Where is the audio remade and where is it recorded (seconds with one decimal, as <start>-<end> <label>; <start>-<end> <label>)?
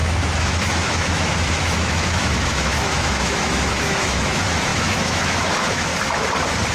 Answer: 0.0-5.9 remade; 5.9-6.7 recorded